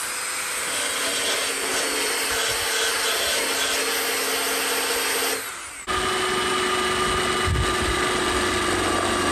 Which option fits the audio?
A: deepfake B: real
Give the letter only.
B